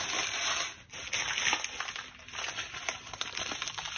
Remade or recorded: recorded